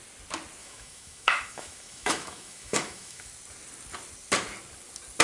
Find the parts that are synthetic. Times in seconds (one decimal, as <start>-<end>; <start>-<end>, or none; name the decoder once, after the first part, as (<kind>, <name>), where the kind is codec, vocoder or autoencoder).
0.6-3.3 (autoencoder, DAC-VAE)